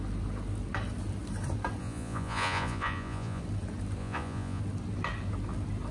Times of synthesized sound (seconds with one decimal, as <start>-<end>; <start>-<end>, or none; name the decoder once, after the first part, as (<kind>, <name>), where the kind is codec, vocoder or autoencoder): 1.8-3.4 (vocoder, Vocos); 4.0-4.6